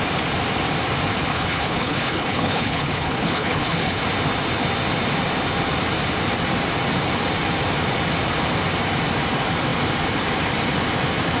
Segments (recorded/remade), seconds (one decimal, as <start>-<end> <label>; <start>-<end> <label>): 0.0-1.3 recorded; 1.3-4.0 remade; 4.0-11.4 recorded